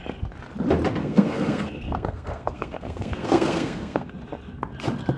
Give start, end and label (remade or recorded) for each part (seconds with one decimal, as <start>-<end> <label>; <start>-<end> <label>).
0.0-1.0 recorded; 1.0-4.1 remade; 4.1-5.2 recorded